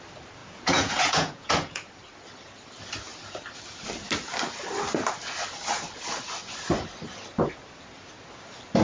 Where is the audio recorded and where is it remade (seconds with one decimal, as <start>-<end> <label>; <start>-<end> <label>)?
0.0-0.4 recorded; 0.4-1.9 remade; 1.9-8.8 recorded